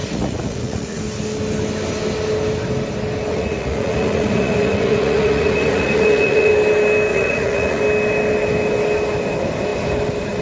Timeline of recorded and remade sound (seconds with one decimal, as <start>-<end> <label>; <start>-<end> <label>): 0.0-1.0 remade; 1.0-3.3 recorded; 3.3-6.5 remade; 6.5-7.1 recorded; 7.1-7.8 remade; 7.8-10.4 recorded